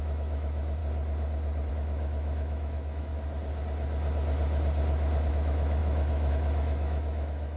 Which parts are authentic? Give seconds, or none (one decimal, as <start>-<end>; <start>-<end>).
0.8-1.7; 3.1-5.3

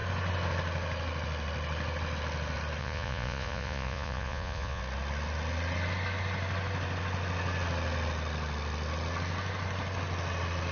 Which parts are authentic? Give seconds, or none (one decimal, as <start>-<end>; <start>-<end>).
0.0-2.8; 4.8-10.7

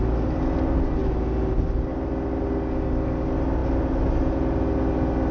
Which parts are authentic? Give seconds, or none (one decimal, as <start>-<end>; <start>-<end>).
0.0-5.3

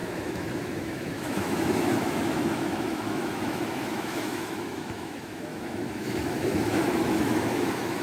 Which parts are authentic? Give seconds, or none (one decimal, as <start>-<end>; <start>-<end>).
none

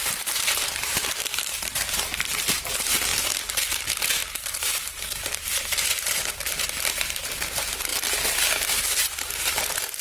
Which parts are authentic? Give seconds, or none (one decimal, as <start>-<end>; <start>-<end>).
7.9-9.5

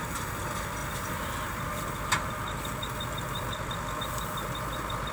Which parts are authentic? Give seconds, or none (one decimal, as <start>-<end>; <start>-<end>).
0.0-5.1

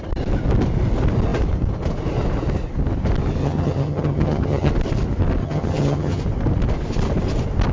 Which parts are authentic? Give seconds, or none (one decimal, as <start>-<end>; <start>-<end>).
0.0-3.4; 4.7-5.4; 6.2-7.7